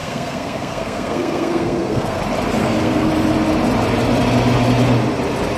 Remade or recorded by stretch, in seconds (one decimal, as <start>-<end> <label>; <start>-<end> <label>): 0.0-2.2 remade; 2.2-2.6 recorded; 2.6-3.1 remade; 3.1-5.6 recorded